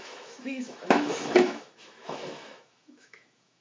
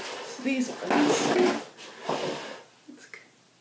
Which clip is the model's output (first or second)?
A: first